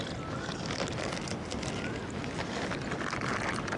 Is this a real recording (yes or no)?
yes